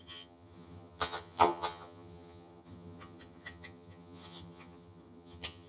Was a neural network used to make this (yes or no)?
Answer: yes